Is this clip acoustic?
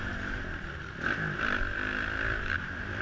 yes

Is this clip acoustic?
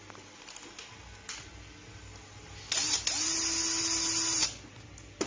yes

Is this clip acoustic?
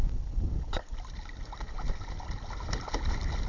yes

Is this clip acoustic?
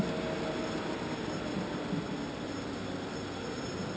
yes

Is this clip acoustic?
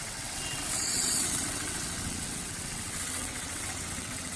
no